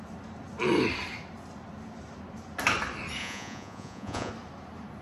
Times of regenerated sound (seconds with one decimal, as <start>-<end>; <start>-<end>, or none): 3.2-4.3